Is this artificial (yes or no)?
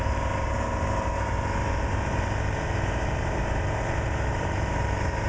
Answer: yes